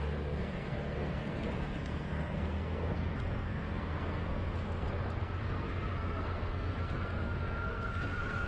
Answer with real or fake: fake